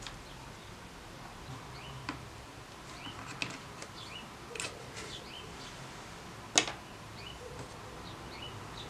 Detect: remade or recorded recorded